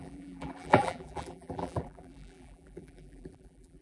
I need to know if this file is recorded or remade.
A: remade